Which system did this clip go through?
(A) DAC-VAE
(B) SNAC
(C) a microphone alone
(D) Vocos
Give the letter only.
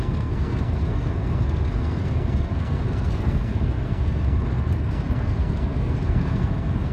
B